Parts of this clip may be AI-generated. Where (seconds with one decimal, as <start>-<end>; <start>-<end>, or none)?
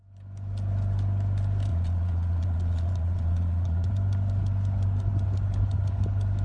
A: 1.7-3.9